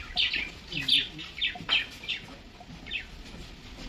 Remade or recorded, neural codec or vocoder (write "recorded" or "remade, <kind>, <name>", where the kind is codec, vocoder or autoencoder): recorded